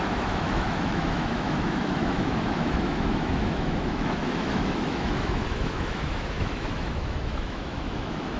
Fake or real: fake